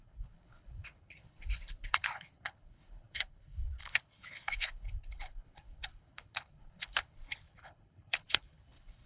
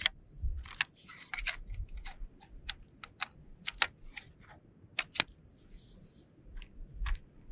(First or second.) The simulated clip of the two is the first